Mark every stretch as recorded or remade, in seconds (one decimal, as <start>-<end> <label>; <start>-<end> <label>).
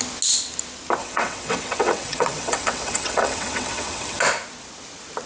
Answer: 0.0-1.0 recorded; 1.0-4.2 remade; 4.2-5.3 recorded